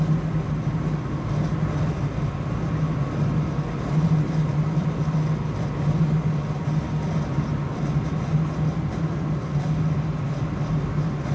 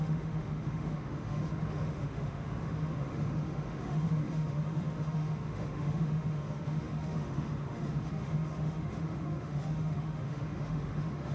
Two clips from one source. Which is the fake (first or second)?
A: second